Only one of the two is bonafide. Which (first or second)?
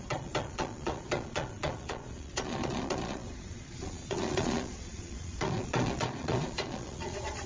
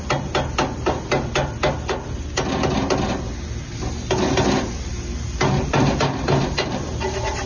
second